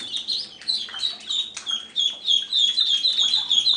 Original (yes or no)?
yes